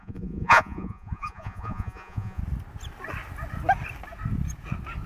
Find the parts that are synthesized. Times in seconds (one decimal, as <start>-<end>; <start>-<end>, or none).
0.0-2.4